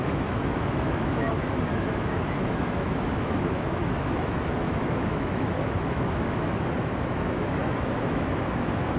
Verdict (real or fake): fake